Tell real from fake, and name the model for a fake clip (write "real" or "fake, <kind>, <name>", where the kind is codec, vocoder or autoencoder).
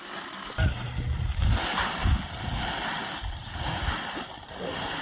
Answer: real